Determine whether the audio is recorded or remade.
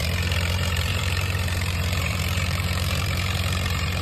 remade